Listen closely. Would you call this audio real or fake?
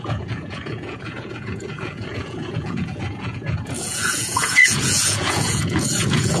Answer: fake